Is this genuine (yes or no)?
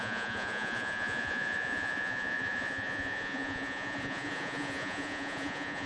no